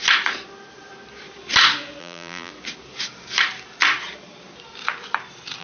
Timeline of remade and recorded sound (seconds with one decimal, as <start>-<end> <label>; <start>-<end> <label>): 0.0-2.0 recorded; 2.0-2.5 remade; 2.5-5.6 recorded